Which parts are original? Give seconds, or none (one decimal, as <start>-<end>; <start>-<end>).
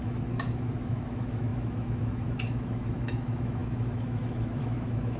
none